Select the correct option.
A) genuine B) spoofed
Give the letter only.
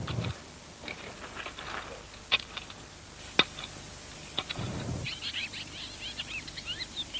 A